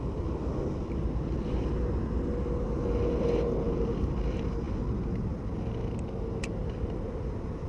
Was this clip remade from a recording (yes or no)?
no